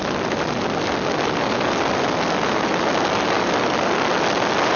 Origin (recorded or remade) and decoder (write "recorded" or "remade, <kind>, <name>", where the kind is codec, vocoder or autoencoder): recorded